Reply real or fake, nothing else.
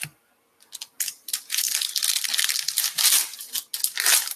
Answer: real